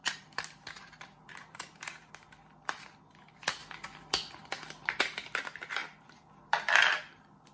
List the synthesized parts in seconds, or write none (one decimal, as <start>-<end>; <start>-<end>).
0.0-2.1